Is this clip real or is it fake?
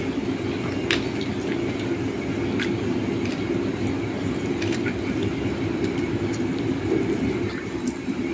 real